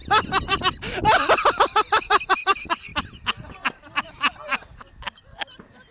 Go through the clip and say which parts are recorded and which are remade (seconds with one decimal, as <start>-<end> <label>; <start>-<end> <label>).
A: 0.0-2.9 remade; 2.9-5.5 recorded; 5.5-5.9 remade